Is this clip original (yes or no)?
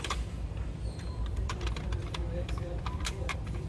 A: no